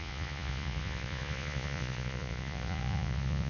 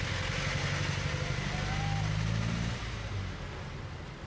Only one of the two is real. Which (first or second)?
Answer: second